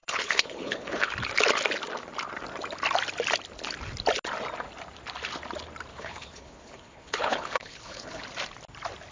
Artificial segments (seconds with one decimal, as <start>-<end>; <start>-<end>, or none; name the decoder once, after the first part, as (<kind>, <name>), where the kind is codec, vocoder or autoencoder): 0.0-1.1 (codec, HILCodec); 5.9-8.2